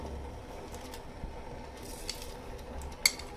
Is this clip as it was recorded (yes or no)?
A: yes